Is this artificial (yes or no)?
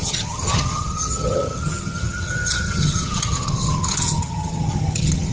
yes